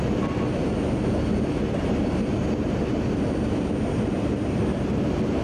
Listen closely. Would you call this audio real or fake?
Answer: real